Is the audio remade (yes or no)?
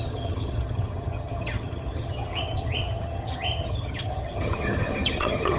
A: yes